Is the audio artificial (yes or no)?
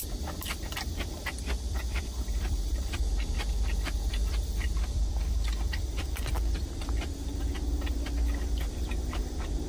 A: yes